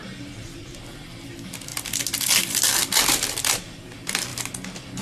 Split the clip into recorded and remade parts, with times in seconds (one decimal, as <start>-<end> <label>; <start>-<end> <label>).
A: 0.0-5.0 recorded